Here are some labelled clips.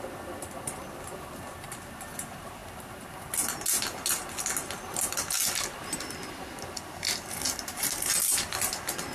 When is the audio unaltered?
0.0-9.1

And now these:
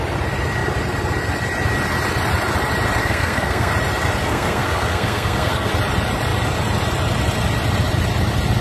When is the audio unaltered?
0.0-3.0; 3.7-4.2; 5.7-8.6

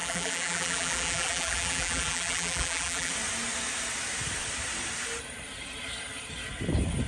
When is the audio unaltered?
3.1-7.1

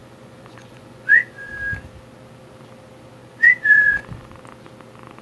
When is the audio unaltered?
1.5-3.2; 4.4-5.2